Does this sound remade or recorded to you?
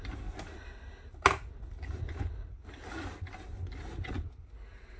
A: recorded